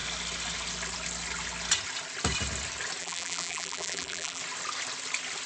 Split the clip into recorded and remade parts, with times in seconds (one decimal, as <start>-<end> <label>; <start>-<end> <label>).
0.0-3.0 recorded; 3.0-4.4 remade; 4.4-5.5 recorded